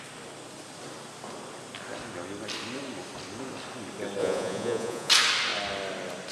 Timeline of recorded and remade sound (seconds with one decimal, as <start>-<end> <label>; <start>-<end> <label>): 0.0-4.2 recorded; 4.2-5.1 remade; 5.1-6.3 recorded